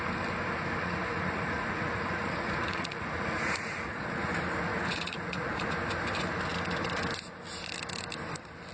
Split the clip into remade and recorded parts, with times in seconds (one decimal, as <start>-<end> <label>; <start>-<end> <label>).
0.0-0.8 recorded; 0.8-4.3 remade; 4.3-4.7 recorded; 4.7-5.7 remade; 5.7-8.7 recorded